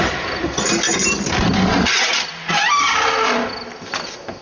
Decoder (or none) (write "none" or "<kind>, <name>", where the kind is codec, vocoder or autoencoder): none